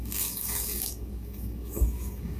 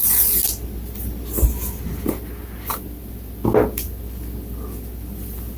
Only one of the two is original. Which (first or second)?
second